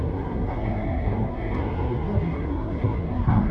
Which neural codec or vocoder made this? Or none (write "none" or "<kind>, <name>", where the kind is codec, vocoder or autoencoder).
codec, SNAC